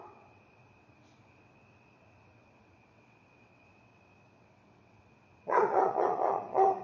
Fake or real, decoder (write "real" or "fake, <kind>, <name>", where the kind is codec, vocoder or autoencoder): fake, vocoder, WaveNeXt